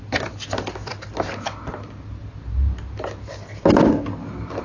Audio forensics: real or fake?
real